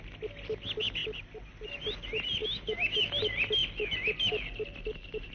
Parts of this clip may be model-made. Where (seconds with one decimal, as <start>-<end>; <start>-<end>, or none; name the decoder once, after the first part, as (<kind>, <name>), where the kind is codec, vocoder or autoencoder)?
2.4-3.2 (autoencoder, DAC-VAE)